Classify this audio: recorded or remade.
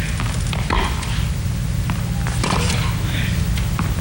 recorded